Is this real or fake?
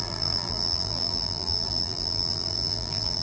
fake